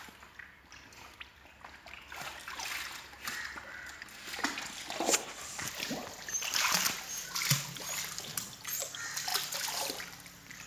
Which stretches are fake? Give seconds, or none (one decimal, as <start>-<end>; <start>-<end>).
none